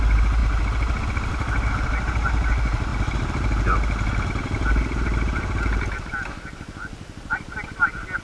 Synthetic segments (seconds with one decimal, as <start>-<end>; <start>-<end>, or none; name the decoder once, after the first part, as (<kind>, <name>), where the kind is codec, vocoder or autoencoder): none